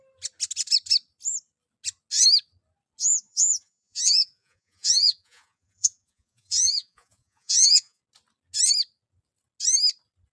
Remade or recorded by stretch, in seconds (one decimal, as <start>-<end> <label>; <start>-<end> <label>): 0.0-3.0 recorded; 3.0-8.0 remade; 8.0-10.3 recorded